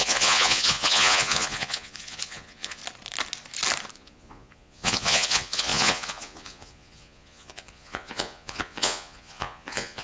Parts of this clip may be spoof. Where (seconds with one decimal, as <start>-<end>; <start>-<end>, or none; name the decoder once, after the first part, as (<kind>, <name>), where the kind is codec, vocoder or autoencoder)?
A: 0.0-2.8 (vocoder, Vocos); 3.9-10.0